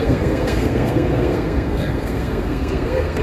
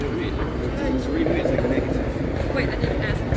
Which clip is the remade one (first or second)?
first